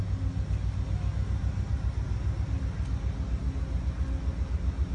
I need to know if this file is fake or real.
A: real